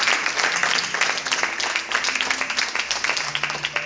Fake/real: real